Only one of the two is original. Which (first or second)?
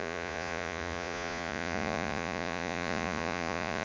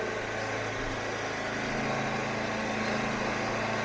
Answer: second